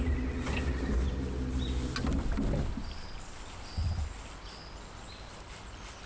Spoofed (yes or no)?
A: no